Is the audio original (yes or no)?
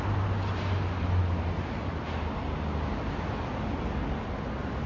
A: yes